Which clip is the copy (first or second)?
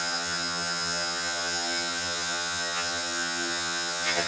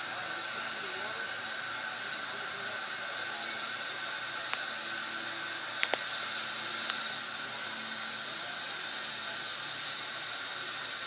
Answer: first